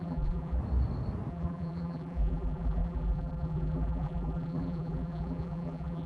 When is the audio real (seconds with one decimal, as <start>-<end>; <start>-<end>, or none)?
0.6-1.3